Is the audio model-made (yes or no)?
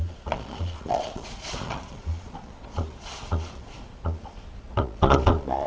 yes